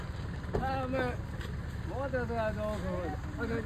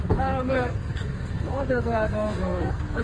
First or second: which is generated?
second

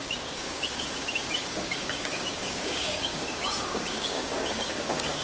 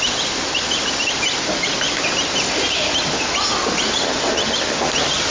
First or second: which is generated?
first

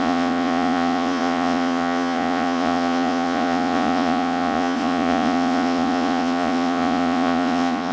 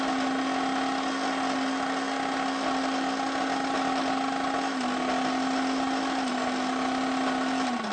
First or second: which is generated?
first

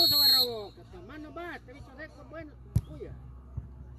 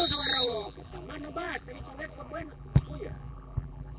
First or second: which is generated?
second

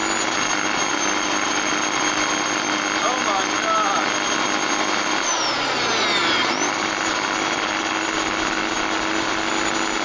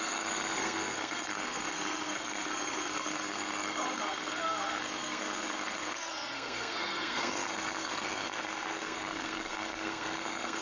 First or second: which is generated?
second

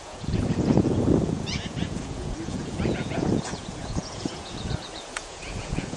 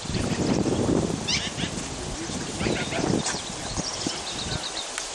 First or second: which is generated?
first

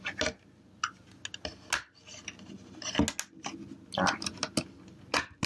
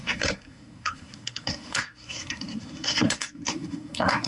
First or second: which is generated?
second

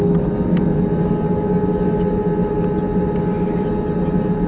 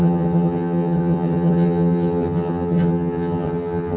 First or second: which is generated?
second